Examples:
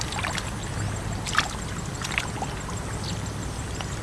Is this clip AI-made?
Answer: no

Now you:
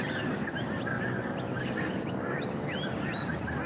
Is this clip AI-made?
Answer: no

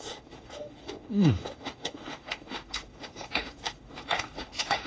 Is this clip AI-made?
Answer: yes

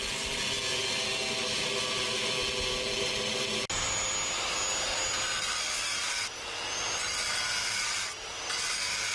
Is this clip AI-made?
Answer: no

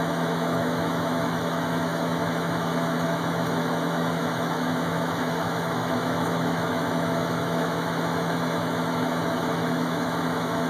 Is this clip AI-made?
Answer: yes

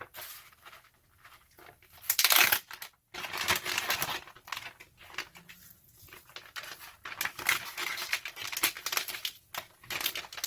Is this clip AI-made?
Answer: no